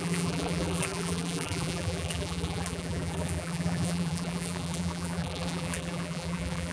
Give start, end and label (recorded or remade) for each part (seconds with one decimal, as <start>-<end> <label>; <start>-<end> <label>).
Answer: 0.0-6.7 remade